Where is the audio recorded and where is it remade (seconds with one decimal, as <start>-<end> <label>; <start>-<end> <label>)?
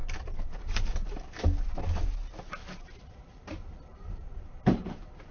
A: 0.0-1.4 remade; 1.4-2.6 recorded; 2.6-5.3 remade